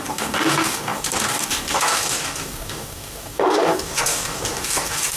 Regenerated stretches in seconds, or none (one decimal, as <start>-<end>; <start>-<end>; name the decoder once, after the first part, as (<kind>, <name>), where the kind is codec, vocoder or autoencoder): 0.0-5.2 (codec, DAC)